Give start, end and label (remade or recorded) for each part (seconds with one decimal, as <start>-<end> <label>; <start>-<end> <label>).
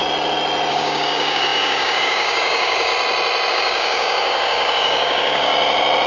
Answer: 0.0-0.7 recorded; 0.7-2.9 remade; 2.9-3.5 recorded; 3.5-5.5 remade; 5.5-6.1 recorded